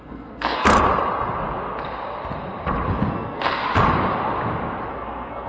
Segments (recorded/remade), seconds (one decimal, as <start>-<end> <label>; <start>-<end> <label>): 0.0-0.7 remade; 0.7-3.1 recorded; 3.1-3.6 remade; 3.6-4.9 recorded; 4.9-5.5 remade